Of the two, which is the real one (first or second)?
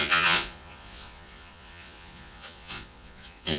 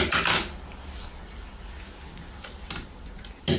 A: second